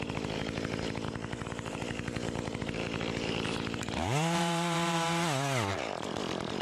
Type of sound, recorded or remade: remade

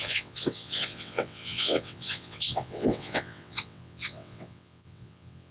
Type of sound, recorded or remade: remade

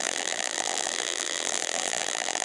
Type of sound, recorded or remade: remade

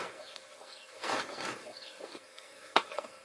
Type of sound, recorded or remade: remade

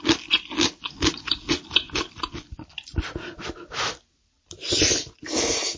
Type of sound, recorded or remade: recorded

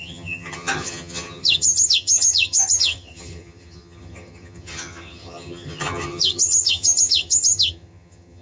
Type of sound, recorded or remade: remade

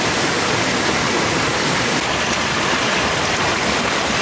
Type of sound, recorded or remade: recorded